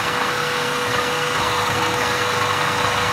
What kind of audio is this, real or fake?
fake